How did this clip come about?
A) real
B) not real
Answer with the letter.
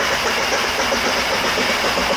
A